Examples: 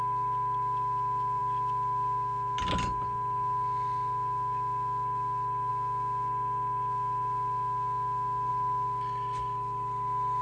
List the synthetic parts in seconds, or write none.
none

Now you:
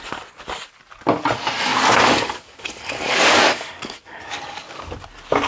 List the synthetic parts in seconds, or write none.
1.7-4.9 (codec, DAC)

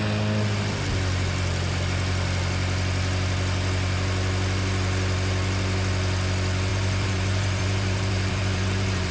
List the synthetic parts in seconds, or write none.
6.7-9.1 (vocoder, BigVGAN v2)

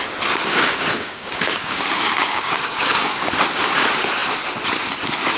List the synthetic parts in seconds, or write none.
0.5-3.3 (codec, DAC)

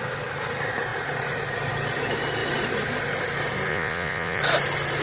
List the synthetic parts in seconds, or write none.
3.7-4.4 (vocoder, Vocos)